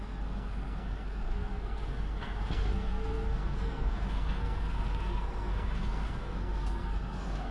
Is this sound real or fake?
fake